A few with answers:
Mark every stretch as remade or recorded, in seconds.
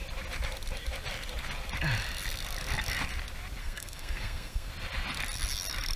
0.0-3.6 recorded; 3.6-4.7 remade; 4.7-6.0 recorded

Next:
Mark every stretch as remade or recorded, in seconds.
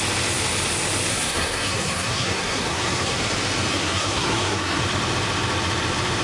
0.0-1.1 recorded; 1.1-3.2 remade; 3.2-3.7 recorded; 3.7-4.8 remade; 4.8-6.2 recorded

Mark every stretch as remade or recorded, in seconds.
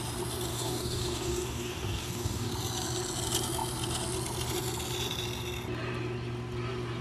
0.0-0.5 recorded; 0.5-2.5 remade; 2.5-7.0 recorded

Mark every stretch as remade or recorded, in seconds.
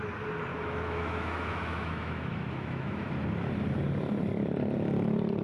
0.0-0.5 recorded; 0.5-3.1 remade; 3.1-5.4 recorded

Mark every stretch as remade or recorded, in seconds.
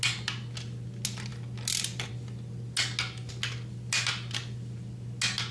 0.0-5.5 recorded